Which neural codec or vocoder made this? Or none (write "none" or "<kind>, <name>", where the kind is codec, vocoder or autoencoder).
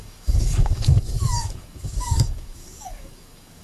codec, DAC